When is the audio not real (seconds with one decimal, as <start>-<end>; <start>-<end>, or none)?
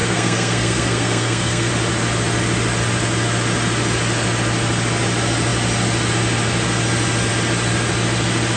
0.0-1.7